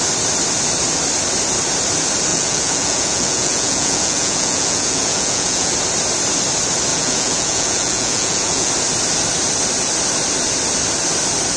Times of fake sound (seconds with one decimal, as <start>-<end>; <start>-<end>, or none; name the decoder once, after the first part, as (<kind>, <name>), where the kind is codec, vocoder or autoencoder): 2.3-5.7 (vocoder, Vocos); 6.9-8.7